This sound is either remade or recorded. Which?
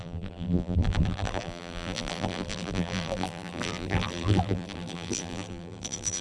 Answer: remade